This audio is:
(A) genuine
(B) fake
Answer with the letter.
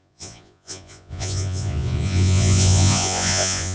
B